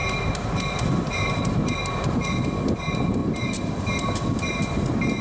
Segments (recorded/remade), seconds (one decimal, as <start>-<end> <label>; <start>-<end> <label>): 0.0-5.2 recorded